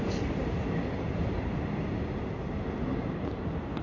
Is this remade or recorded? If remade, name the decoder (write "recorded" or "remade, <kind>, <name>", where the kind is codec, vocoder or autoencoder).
recorded